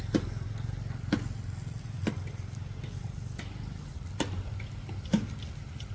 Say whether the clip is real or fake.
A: real